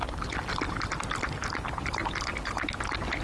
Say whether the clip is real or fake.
real